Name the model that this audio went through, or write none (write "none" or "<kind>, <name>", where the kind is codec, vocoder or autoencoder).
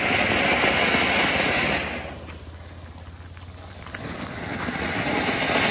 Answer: none